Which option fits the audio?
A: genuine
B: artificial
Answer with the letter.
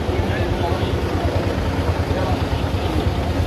A